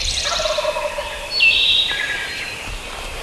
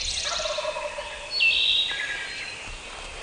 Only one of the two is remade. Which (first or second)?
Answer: first